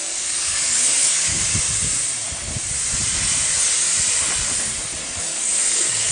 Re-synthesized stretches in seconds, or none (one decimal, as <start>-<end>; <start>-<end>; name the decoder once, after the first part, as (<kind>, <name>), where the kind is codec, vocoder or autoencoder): 0.0-1.5 (codec, DAC); 5.2-6.1